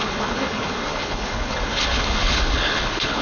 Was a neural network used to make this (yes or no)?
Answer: yes